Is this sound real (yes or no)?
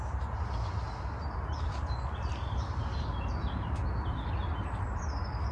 yes